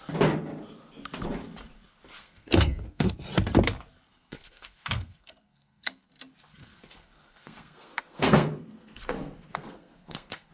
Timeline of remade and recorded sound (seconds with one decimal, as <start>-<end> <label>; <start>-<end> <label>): 0.0-2.2 recorded; 2.2-3.1 remade; 3.1-4.1 recorded; 4.1-6.1 remade; 6.1-6.5 recorded; 6.5-10.5 remade